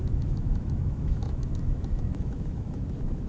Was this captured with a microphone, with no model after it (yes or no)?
no